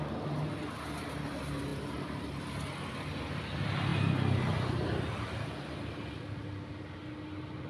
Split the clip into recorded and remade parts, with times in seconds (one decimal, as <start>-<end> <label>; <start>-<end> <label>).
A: 0.0-7.7 recorded